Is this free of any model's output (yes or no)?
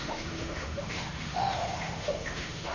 no